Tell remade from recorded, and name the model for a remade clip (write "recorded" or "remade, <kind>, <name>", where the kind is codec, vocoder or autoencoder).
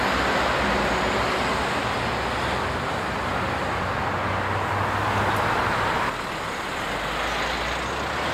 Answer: recorded